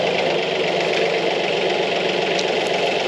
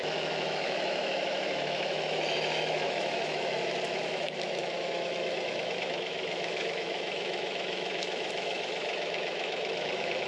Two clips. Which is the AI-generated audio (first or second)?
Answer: second